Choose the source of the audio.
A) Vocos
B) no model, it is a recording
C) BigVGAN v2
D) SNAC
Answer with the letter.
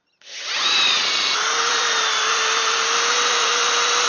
C